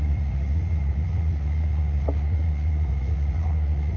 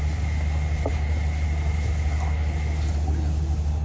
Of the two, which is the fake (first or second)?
first